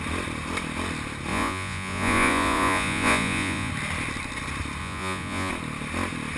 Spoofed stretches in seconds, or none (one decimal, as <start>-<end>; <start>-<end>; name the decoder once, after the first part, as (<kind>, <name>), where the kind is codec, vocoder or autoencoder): 1.3-3.7 (vocoder, Vocos); 4.8-5.5